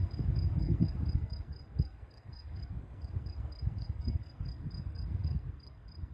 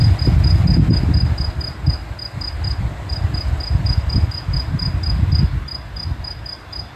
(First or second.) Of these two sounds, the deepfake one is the first